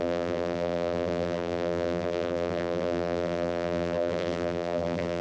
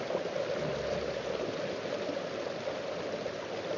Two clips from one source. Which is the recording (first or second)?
second